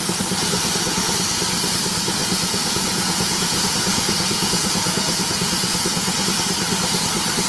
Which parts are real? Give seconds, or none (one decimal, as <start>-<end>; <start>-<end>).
0.0-2.2; 6.2-7.5